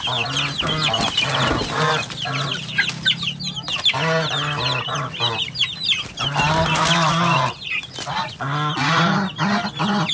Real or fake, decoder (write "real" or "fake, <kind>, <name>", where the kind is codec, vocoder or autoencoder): real